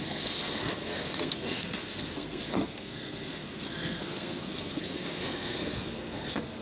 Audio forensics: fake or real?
fake